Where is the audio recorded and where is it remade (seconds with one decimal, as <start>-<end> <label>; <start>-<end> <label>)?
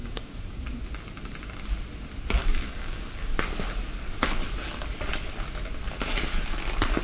0.0-0.6 remade; 0.6-2.5 recorded; 2.5-3.3 remade; 3.3-7.0 recorded